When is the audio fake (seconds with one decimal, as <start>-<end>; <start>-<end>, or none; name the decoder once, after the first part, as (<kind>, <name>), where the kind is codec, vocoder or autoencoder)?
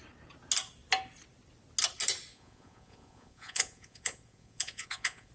2.3-5.3 (vocoder, Vocos)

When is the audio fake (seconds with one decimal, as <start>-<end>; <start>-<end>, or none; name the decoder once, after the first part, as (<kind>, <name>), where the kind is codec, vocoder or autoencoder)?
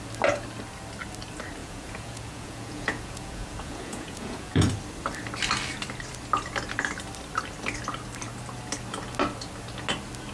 1.6-4.7 (vocoder, Vocos)